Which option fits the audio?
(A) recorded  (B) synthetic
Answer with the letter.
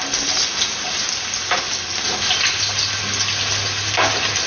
A